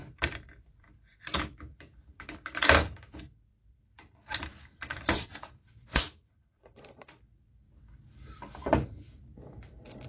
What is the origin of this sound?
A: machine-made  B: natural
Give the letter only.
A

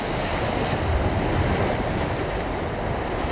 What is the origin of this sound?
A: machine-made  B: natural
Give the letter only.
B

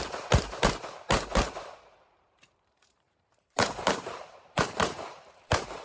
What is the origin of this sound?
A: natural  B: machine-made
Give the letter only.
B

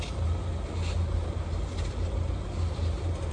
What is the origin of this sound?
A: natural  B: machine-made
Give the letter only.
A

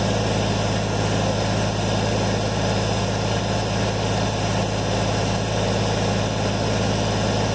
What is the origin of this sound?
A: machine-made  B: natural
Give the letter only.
B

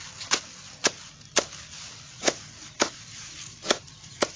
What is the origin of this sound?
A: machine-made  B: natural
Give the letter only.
B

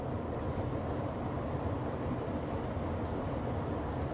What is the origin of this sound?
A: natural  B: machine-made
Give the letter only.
A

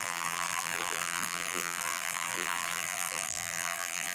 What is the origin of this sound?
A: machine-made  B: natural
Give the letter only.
A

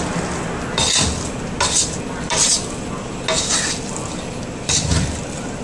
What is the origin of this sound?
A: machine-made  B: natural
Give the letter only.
B